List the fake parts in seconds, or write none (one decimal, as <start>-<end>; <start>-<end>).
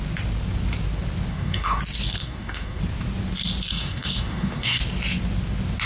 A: 1.3-1.8; 2.2-2.8; 3.7-4.8